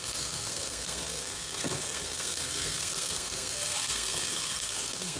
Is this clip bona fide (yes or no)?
no